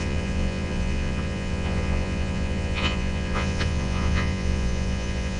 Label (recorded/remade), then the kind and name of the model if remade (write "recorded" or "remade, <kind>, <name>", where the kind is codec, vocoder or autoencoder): remade, vocoder, Vocos